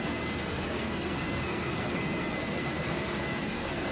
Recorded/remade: remade